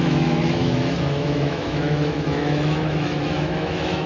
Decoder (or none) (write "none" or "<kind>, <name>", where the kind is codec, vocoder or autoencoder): autoencoder, DAC-VAE